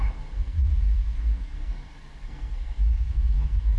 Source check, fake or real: fake